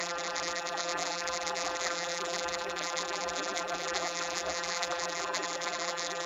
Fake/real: fake